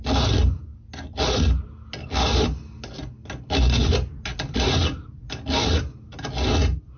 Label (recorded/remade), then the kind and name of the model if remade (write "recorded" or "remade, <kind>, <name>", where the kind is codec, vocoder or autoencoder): recorded